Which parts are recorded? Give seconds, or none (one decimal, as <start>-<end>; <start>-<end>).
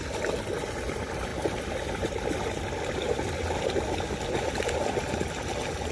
0.0-5.9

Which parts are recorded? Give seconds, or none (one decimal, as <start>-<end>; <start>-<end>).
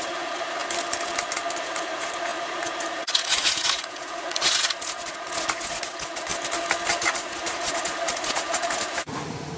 0.6-1.6; 6.3-7.0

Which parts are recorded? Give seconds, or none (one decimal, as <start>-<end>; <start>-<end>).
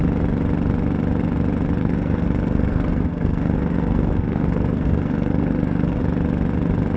0.0-1.8; 6.0-7.0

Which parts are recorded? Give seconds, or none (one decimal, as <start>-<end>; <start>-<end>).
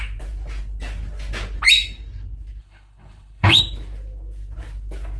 0.0-2.6; 3.6-5.2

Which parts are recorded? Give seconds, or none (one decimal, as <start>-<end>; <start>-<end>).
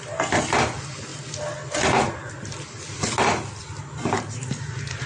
0.0-5.1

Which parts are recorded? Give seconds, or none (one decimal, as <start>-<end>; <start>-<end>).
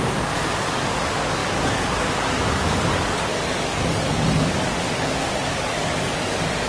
none